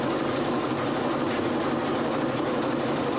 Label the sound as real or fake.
real